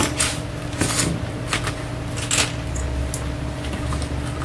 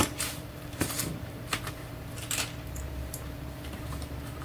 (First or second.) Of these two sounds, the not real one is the second